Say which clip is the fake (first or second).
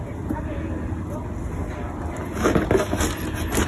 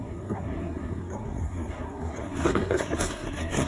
second